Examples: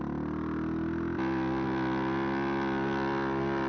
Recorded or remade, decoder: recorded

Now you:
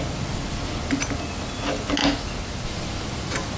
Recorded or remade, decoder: recorded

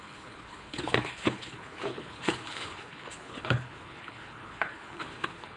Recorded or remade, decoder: remade, codec, HILCodec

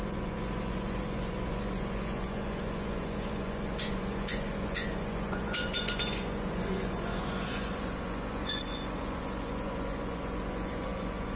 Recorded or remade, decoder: remade, vocoder, Vocos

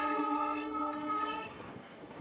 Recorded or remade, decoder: remade, codec, SNAC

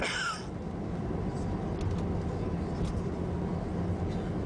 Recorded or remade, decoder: recorded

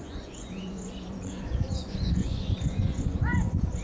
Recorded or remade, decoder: remade, vocoder, Vocos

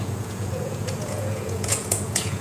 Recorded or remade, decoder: remade, vocoder, Vocos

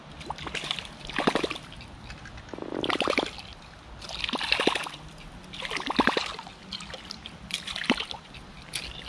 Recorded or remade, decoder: recorded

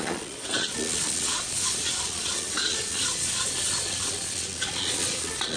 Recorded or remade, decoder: remade, vocoder, Vocos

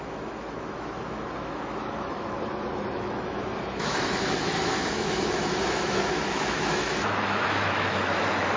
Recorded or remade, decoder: remade, autoencoder, DAC-VAE